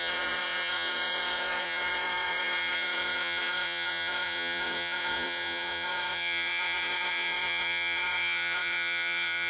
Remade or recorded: remade